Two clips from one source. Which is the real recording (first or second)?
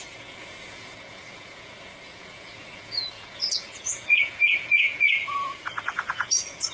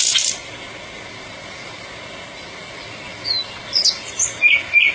second